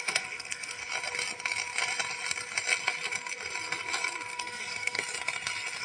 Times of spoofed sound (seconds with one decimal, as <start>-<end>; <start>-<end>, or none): 0.0-0.8; 4.3-5.0